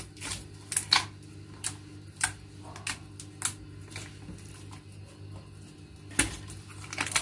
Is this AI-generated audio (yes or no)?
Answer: no